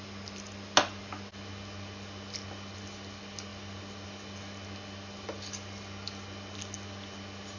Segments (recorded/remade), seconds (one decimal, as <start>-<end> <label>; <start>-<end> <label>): 0.0-7.6 recorded